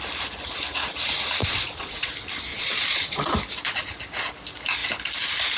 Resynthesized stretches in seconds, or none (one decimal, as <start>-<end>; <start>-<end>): 1.4-2.1; 2.5-3.2